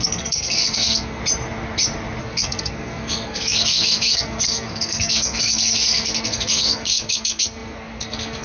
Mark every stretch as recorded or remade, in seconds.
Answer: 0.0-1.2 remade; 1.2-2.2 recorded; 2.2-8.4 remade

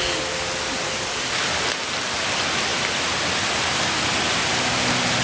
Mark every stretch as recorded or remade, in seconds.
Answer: 0.0-5.2 recorded

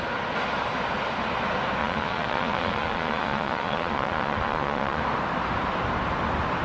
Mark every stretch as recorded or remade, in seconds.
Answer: 0.0-1.8 recorded; 1.8-5.0 remade; 5.0-6.6 recorded

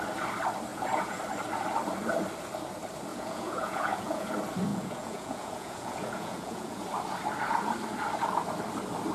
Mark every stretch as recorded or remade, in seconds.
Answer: 0.0-0.7 recorded; 0.7-1.2 remade; 1.2-3.1 recorded; 3.1-4.3 remade; 4.3-4.7 recorded; 4.7-6.8 remade; 6.8-9.1 recorded

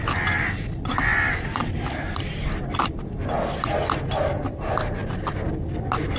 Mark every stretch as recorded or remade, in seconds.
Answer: 0.0-6.2 recorded

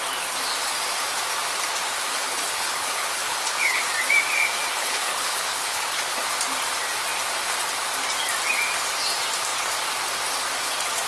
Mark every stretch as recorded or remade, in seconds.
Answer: 0.0-2.1 recorded; 2.1-3.8 remade; 3.8-4.8 recorded; 4.8-6.1 remade; 6.1-11.1 recorded

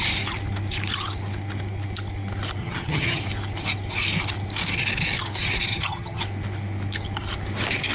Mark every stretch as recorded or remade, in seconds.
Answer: 0.0-2.6 recorded; 2.6-3.2 remade; 3.2-5.7 recorded; 5.7-6.2 remade; 6.2-7.9 recorded